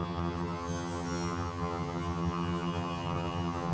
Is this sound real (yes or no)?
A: no